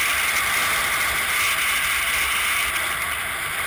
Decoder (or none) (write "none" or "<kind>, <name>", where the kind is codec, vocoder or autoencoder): none